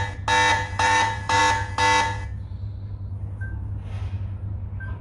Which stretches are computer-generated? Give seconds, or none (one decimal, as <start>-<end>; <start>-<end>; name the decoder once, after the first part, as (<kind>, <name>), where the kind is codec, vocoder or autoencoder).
0.5-1.4 (vocoder, BigVGAN v2)